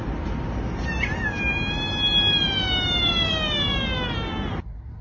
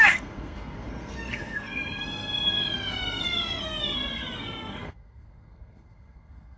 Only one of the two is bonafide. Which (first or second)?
first